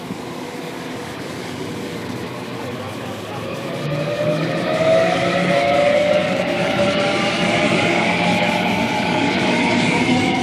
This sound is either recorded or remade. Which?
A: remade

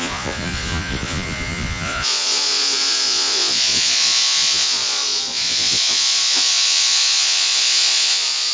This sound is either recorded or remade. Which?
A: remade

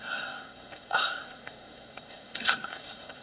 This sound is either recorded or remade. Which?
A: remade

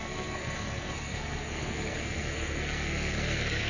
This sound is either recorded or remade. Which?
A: remade